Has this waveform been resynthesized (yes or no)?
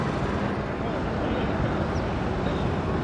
no